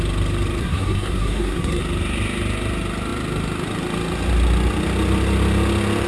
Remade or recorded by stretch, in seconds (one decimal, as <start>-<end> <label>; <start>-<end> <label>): 0.0-0.6 recorded; 0.6-1.8 remade; 1.8-6.1 recorded